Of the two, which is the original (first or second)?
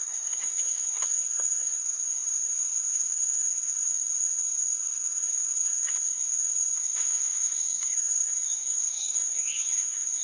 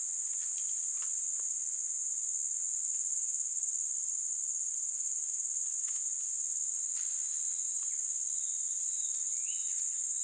second